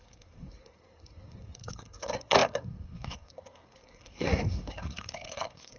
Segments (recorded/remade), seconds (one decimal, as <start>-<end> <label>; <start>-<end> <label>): 0.0-5.8 remade